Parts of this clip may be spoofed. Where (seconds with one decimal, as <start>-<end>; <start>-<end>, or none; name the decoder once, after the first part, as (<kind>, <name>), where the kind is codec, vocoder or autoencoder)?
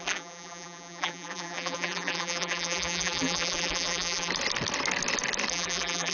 0.0-4.3 (vocoder, BigVGAN v2); 5.5-6.1